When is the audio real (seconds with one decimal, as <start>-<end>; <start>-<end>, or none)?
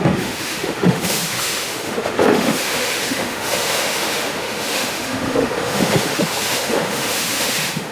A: none